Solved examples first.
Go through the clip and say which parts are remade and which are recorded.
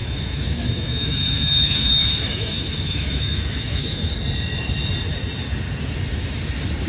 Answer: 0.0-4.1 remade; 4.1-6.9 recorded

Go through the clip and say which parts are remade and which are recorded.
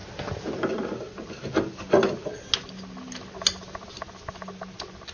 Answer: 0.0-5.1 recorded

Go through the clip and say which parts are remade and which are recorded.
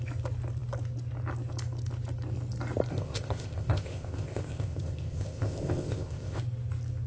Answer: 0.0-2.9 recorded; 2.9-6.4 remade; 6.4-7.1 recorded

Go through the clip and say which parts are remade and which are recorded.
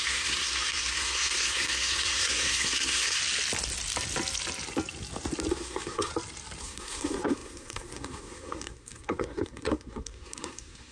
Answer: 0.0-3.2 remade; 3.2-5.5 recorded; 5.5-6.1 remade; 6.1-6.6 recorded; 6.6-10.9 remade